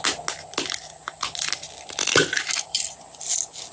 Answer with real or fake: real